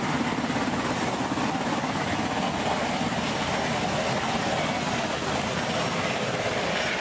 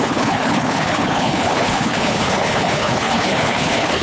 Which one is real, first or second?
first